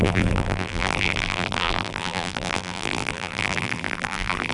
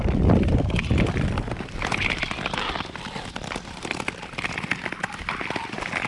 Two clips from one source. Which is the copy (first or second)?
first